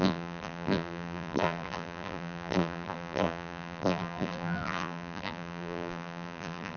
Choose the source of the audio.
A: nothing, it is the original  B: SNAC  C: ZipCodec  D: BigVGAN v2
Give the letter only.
D